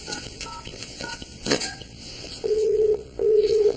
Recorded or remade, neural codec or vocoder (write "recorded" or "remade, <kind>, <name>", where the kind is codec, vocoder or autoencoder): remade, vocoder, WaveNeXt